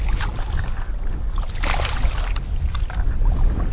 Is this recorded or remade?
remade